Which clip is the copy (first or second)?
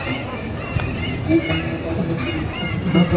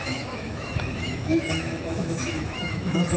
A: second